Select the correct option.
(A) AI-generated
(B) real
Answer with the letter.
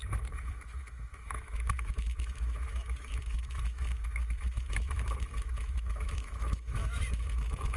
A